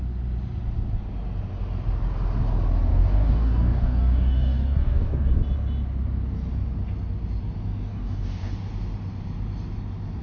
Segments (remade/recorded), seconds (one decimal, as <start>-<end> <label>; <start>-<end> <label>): 0.0-2.9 recorded; 2.9-5.3 remade; 5.3-7.9 recorded; 7.9-8.5 remade; 8.5-10.2 recorded